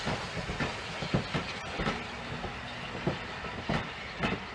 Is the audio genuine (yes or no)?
yes